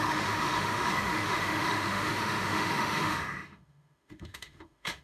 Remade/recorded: remade